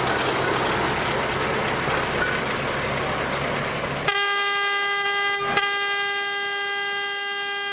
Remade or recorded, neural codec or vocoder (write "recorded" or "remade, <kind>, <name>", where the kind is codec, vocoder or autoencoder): recorded